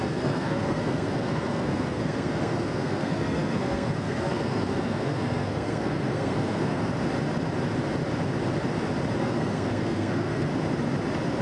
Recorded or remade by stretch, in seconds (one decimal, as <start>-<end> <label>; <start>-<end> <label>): 0.0-6.9 remade; 6.9-9.2 recorded; 9.2-10.5 remade; 10.5-11.4 recorded

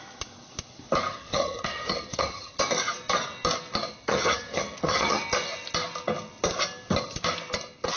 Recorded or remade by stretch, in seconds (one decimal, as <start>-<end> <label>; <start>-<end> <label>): 0.0-1.1 recorded; 1.1-2.6 remade; 2.6-4.0 recorded; 4.0-5.2 remade; 5.2-8.0 recorded

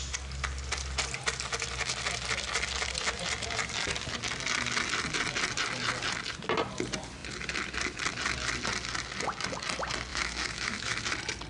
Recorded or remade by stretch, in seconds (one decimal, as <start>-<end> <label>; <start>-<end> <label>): 0.0-10.1 recorded; 10.1-11.0 remade; 11.0-11.5 recorded

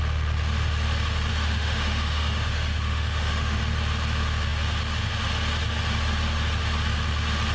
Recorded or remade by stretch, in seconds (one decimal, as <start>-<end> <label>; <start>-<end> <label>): 0.0-1.3 recorded; 1.3-3.6 remade; 3.6-7.5 recorded

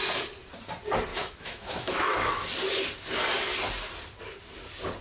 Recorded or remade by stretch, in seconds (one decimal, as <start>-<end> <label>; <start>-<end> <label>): 0.0-1.1 recorded; 1.1-2.5 remade; 2.5-5.0 recorded

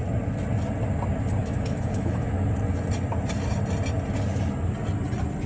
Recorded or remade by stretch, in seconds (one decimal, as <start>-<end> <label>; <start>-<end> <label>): 0.0-1.4 recorded; 1.4-2.5 remade; 2.5-5.5 recorded

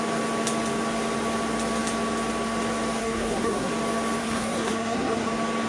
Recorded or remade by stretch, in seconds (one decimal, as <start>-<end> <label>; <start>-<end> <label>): 0.0-3.0 recorded; 3.0-3.7 remade; 3.7-4.2 recorded; 4.2-5.3 remade; 5.3-5.7 recorded